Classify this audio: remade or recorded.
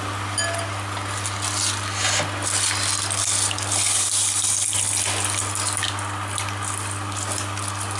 recorded